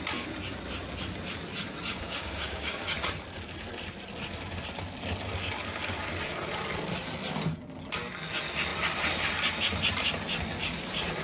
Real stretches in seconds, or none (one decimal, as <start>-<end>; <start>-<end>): 0.0-1.9; 2.8-11.2